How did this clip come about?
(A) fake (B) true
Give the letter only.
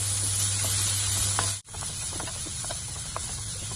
B